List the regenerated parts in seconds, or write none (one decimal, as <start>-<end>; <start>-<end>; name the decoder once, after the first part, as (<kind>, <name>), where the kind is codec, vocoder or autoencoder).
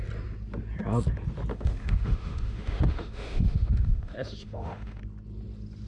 1.5-5.0 (autoencoder, DAC-VAE)